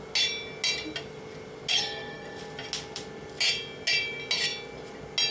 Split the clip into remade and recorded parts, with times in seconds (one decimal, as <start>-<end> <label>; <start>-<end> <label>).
0.0-1.7 recorded; 1.7-2.4 remade; 2.4-5.3 recorded